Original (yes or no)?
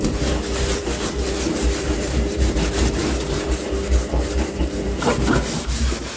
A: no